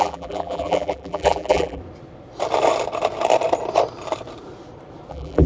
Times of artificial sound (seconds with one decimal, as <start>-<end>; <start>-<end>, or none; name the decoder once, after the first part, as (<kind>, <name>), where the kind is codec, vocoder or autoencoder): 0.0-1.8 (vocoder, BigVGAN v2); 5.1-5.5